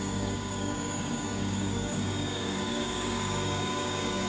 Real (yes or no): no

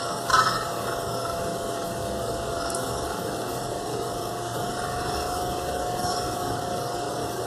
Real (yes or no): no